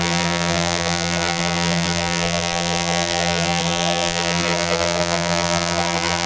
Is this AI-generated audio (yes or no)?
yes